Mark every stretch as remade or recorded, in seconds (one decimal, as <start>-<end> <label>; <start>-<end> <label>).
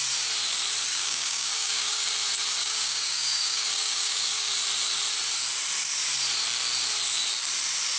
0.0-0.9 recorded; 0.9-2.1 remade; 2.1-2.6 recorded; 2.6-4.5 remade; 4.5-8.0 recorded